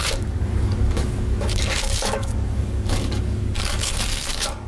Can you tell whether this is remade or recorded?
remade